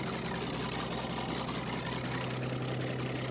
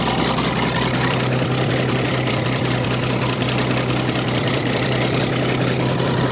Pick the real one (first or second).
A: first